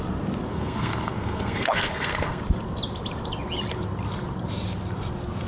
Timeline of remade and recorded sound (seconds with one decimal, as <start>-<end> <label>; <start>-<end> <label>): 0.0-0.5 recorded; 0.5-2.4 remade; 2.4-5.5 recorded